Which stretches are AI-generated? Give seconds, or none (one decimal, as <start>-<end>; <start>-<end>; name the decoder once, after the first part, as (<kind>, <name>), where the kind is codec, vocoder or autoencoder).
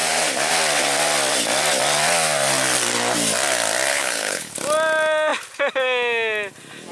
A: 3.9-4.5 (codec, HILCodec)